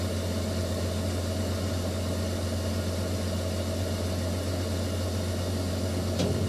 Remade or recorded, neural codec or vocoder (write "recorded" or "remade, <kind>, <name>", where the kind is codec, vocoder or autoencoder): recorded